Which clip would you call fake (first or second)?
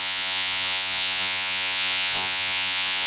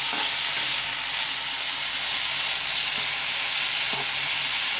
first